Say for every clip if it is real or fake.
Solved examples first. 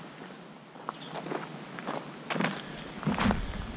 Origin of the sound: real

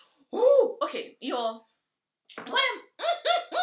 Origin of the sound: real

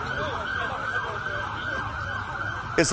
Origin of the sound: real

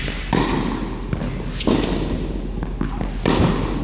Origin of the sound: real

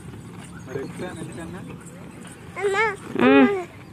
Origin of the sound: real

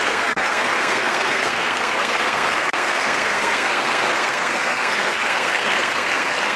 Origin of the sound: fake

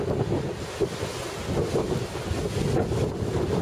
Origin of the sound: real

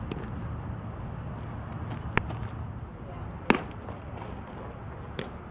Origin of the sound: real